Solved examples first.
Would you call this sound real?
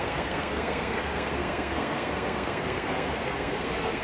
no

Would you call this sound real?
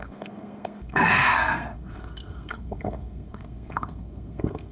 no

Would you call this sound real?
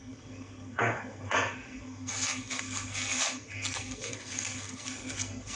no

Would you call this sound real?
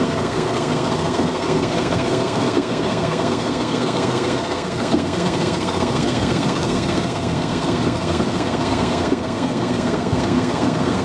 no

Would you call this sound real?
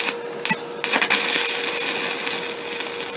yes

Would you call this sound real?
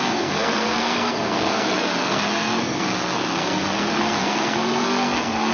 no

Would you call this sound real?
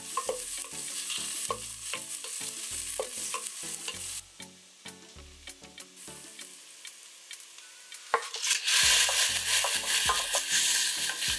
yes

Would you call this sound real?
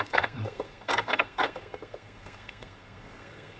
no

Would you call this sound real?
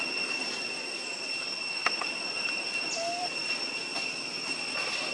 yes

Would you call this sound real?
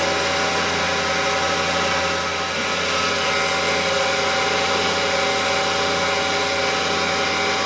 yes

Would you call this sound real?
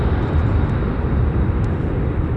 yes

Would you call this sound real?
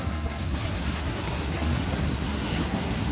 no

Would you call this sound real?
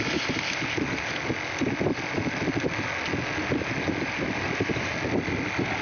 yes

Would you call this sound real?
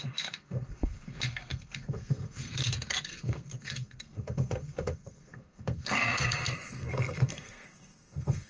no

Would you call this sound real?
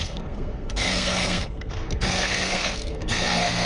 no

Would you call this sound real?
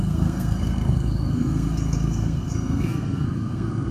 no